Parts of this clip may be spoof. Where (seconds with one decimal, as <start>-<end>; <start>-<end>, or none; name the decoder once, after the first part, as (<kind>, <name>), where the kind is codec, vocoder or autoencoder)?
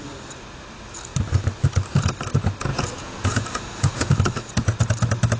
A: 2.7-4.1 (vocoder, Vocos)